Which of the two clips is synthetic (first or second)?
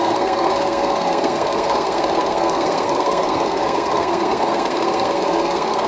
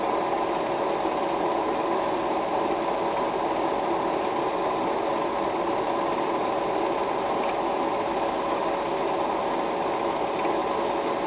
first